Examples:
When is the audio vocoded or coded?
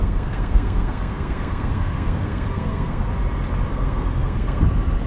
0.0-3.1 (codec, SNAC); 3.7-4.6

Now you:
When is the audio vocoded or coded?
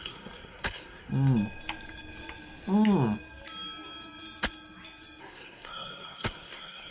0.0-1.1 (codec, SNAC); 5.2-6.9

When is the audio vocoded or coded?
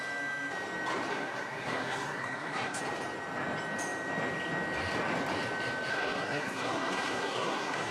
1.1-2.8 (codec, SNAC); 5.9-7.9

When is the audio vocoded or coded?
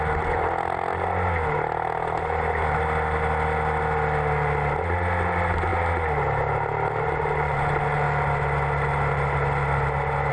none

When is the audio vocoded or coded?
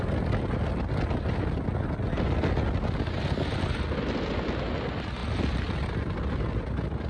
none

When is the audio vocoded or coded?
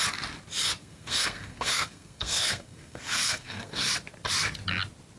0.8-3.9 (codec, SNAC)